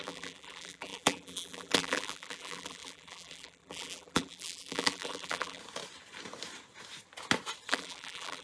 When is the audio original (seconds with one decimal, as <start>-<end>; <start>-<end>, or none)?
5.6-7.7